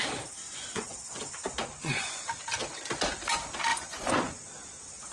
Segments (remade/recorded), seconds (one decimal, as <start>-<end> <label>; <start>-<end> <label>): 0.0-0.4 recorded; 0.4-1.2 remade; 1.2-1.6 recorded; 1.6-2.2 remade; 2.2-3.7 recorded; 3.7-4.3 remade; 4.3-5.1 recorded